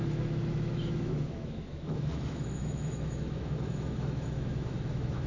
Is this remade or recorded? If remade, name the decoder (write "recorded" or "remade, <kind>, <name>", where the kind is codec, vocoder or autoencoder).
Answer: remade, autoencoder, DAC-VAE